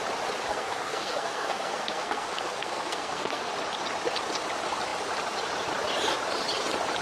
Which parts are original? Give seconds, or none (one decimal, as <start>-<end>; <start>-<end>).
0.0-0.5; 3.5-7.0